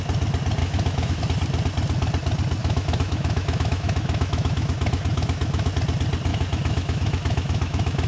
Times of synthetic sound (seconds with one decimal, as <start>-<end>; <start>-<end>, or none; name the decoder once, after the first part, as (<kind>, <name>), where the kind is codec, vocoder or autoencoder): 0.6-1.2 (autoencoder, DAC-VAE); 2.6-5.7; 6.3-8.1